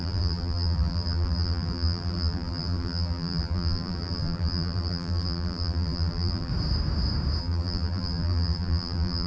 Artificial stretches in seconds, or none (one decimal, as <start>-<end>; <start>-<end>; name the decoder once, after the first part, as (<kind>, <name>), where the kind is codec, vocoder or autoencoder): 0.0-6.5 (vocoder, BigVGAN v2); 7.4-9.3